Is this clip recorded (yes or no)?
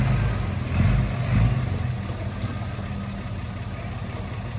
yes